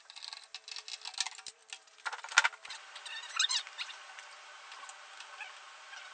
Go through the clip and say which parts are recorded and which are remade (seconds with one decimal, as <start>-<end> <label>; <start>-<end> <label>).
0.0-6.1 recorded